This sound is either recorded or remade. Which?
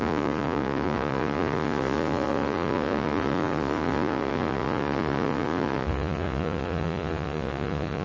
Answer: remade